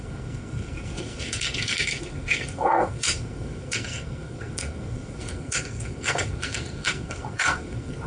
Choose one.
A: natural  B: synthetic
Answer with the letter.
B